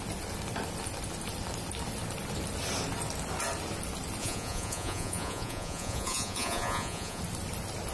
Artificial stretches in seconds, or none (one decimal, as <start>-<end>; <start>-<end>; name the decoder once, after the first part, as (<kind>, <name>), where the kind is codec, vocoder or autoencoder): 4.2-7.2 (vocoder, Vocos)